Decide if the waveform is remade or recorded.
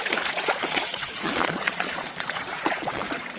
remade